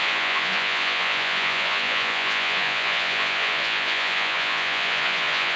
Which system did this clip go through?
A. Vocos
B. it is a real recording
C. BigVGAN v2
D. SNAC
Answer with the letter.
A